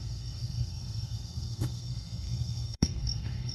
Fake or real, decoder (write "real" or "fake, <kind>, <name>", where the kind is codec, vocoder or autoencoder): fake, codec, SNAC